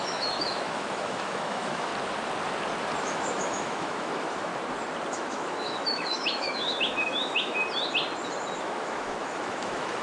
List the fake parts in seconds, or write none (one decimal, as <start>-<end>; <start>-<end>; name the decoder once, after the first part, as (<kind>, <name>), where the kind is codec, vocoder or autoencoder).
0.0-1.9 (autoencoder, DAC-VAE); 3.0-4.5; 5.1-7.6; 8.6-10.0